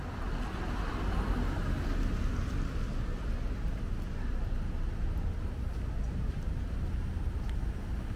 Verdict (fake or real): real